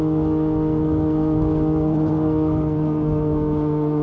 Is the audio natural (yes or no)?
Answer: no